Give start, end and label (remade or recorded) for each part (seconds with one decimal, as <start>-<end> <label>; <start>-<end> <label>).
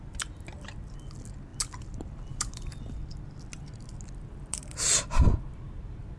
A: 0.0-6.2 recorded